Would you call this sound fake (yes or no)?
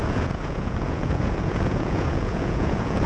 yes